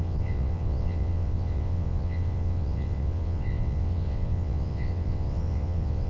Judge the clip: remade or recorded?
remade